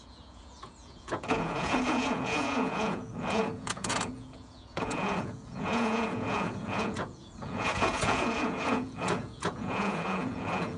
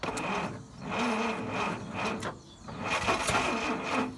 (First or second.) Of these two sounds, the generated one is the first